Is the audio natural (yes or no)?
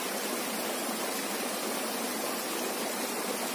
yes